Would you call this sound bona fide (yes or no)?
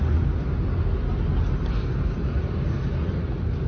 yes